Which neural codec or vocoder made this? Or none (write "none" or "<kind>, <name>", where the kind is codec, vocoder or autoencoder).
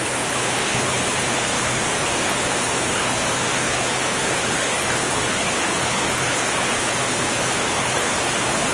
codec, HILCodec